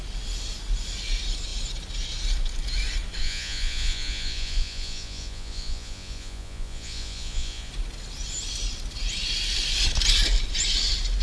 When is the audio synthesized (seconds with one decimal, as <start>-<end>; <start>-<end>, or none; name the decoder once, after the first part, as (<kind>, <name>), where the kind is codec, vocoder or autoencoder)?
3.2-7.7 (vocoder, Vocos)